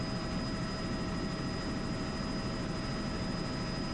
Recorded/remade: recorded